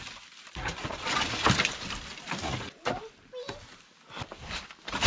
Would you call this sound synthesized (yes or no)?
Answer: no